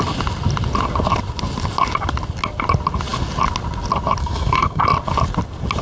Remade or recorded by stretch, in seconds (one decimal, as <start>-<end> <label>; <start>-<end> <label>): 0.0-4.2 recorded; 4.2-4.8 remade; 4.8-5.8 recorded